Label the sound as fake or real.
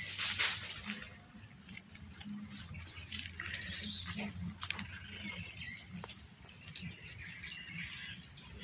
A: real